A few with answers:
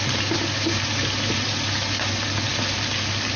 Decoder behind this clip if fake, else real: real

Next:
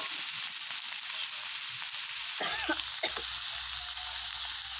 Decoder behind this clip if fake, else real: real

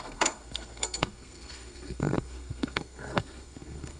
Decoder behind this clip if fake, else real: fake, codec, SNAC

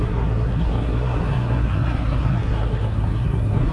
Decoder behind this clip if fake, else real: fake, codec, SNAC